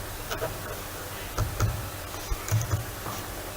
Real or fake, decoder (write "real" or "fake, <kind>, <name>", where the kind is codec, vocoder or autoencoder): real